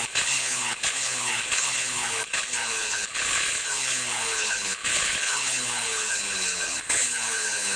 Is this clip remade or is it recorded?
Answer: remade